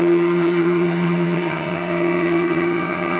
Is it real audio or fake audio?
fake